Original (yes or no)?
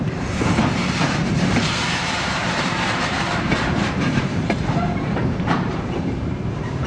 no